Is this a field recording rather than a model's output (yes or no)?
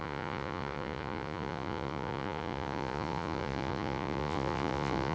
no